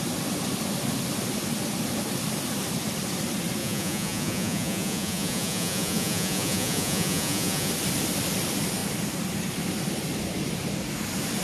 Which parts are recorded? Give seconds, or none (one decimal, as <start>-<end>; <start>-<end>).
0.0-3.6; 7.7-11.4